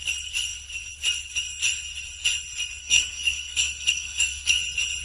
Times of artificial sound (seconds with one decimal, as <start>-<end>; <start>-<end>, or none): 2.8-4.6

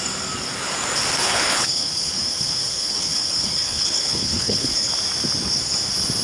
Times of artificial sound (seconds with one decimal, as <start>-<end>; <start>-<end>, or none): 1.2-4.9